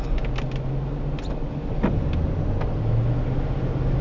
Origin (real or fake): real